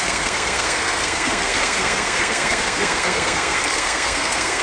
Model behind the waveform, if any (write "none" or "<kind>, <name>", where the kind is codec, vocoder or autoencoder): codec, SNAC